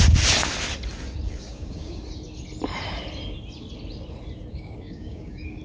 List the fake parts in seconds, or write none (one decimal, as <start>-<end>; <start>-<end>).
1.4-2.0; 4.5-5.6